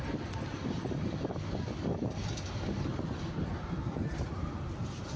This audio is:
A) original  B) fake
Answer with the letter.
A